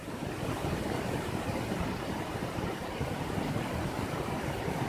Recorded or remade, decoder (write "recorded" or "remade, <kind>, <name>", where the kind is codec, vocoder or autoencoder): recorded